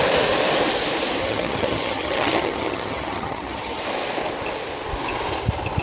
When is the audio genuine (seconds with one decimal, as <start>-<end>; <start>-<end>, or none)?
0.0-1.2; 3.8-5.8